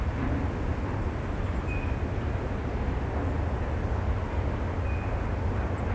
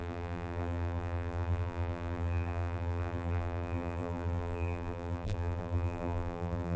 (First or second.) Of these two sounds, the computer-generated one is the second